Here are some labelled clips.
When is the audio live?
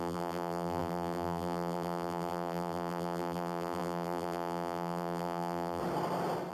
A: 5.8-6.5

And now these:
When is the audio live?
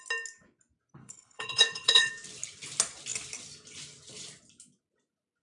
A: 0.0-1.0; 2.1-5.4